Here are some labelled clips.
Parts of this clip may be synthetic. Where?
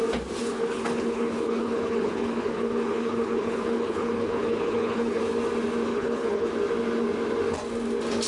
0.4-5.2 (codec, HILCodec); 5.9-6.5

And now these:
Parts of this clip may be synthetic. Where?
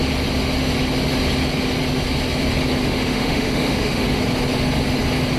2.8-4.2 (autoencoder, DAC-VAE)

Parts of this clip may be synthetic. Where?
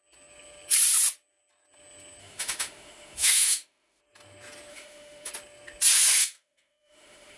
2.2-4.0 (autoencoder, DAC-VAE); 4.7-5.3; 6.2-7.4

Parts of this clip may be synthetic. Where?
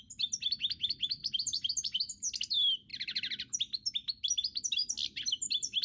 none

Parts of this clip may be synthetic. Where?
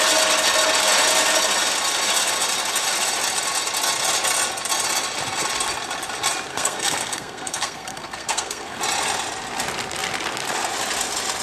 6.5-8.8 (codec, SNAC)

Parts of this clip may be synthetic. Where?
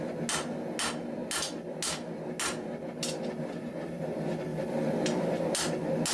4.5-5.4 (vocoder, BigVGAN v2)